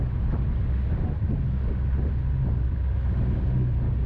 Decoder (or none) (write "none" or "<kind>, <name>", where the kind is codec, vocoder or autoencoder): none